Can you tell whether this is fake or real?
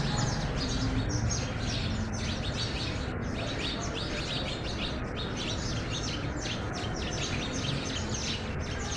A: real